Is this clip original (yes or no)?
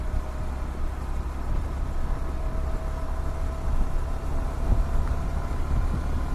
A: yes